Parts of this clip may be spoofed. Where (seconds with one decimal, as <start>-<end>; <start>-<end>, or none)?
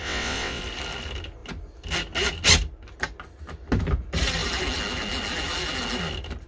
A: 0.0-0.6